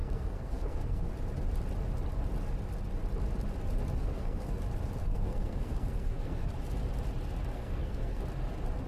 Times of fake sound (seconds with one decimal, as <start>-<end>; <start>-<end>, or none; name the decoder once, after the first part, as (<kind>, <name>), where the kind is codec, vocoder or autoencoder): 0.0-1.1 (codec, SNAC); 4.0-4.6; 5.0-6.5; 7.5-8.2